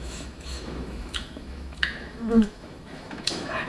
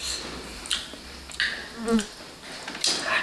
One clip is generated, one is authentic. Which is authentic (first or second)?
second